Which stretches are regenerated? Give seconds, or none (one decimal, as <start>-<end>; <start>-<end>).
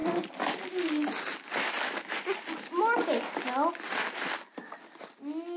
none